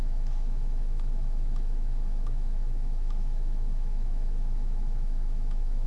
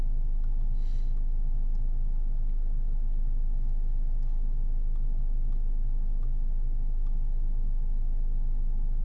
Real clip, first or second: second